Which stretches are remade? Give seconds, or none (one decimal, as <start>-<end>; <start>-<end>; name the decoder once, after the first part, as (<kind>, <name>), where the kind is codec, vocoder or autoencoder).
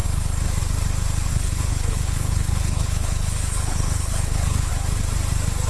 1.3-4.7 (codec, HILCodec)